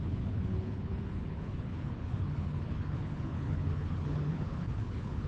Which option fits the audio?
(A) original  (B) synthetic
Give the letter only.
B